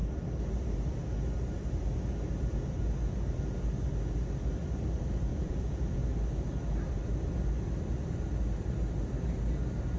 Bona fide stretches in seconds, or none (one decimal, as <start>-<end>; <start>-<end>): 0.0-5.3; 6.1-10.0